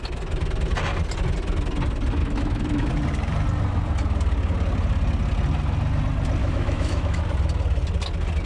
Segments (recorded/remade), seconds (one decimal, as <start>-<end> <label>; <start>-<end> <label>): 0.0-2.2 recorded; 2.2-2.9 remade; 2.9-6.4 recorded; 6.4-7.2 remade; 7.2-8.5 recorded